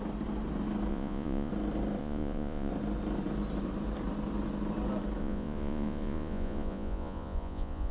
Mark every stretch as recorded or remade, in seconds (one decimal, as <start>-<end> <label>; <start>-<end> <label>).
0.0-0.9 recorded; 0.9-1.5 remade; 1.5-2.0 recorded; 2.0-2.7 remade; 2.7-5.2 recorded; 5.2-7.9 remade